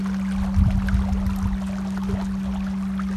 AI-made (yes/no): no